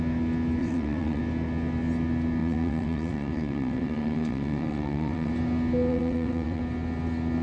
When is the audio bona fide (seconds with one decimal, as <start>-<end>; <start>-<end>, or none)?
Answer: 0.0-0.6; 1.2-2.4; 5.3-5.9; 6.6-7.4